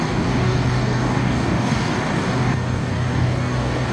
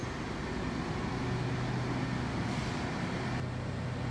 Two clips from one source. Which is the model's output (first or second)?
first